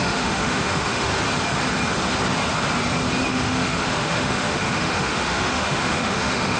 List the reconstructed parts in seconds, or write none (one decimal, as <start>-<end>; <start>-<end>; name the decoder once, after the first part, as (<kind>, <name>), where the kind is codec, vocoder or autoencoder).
0.0-1.1 (autoencoder, DAC-VAE); 3.3-6.6